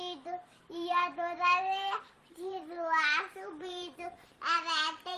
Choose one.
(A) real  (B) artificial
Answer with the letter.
B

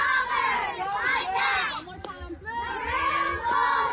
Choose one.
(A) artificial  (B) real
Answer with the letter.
A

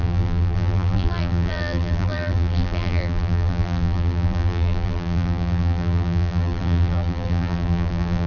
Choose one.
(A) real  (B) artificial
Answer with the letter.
B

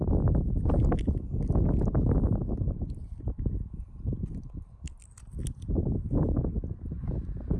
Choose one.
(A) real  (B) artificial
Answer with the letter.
A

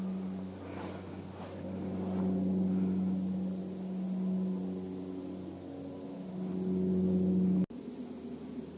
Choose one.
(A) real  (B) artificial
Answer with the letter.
A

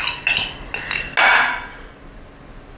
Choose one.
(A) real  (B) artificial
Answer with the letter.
A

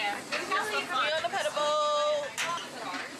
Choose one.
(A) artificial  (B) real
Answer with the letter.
B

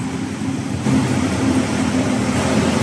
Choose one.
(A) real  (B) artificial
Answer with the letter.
A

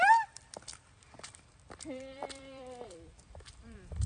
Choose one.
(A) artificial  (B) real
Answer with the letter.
A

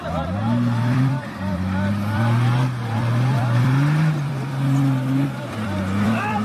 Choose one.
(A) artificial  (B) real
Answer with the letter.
A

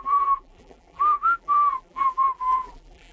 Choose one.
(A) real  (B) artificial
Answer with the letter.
B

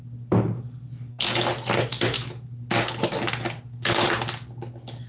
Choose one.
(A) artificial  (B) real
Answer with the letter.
B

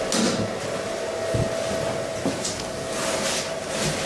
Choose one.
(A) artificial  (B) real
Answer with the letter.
B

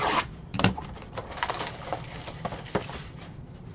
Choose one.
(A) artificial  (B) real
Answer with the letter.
A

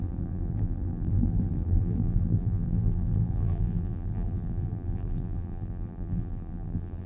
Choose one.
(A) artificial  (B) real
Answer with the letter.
A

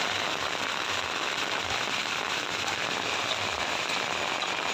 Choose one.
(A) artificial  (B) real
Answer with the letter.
B